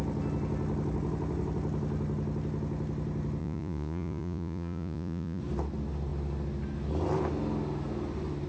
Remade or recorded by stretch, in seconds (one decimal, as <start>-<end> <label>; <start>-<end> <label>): 0.0-3.4 recorded; 3.4-5.4 remade; 5.4-8.5 recorded